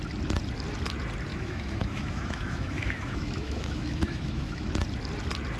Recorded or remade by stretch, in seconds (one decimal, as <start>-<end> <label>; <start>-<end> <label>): 0.0-1.3 recorded; 1.3-4.7 remade; 4.7-5.6 recorded